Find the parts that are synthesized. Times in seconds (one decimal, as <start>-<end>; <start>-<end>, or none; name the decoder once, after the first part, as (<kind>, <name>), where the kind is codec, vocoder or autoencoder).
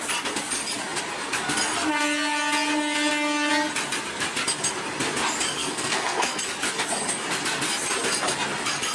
5.6-6.4 (codec, SNAC)